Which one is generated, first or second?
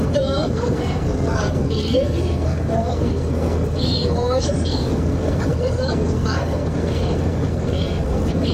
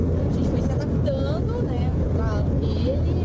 first